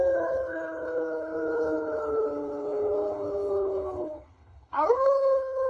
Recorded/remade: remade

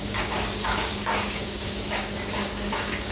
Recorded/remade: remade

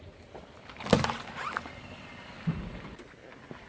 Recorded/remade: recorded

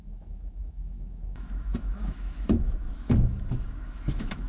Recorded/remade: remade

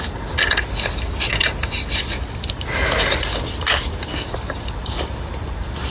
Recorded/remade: recorded